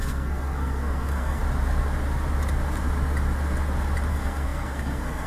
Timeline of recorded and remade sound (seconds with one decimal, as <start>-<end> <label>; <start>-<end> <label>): 0.0-1.4 remade; 1.4-4.1 recorded; 4.1-5.3 remade